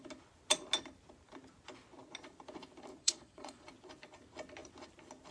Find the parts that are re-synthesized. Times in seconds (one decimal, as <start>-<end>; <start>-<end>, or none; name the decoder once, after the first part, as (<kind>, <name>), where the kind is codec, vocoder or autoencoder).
3.0-3.7 (vocoder, Vocos)